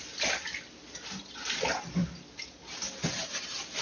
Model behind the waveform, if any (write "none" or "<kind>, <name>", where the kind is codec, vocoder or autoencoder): none